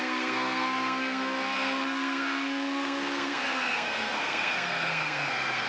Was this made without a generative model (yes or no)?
no